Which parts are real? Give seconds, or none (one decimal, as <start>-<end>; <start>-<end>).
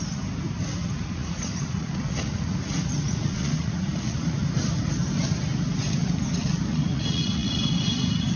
0.0-0.8; 4.5-6.7; 7.7-8.4